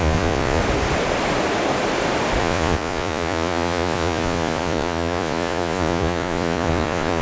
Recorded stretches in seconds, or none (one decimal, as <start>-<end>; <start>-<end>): 0.6-2.4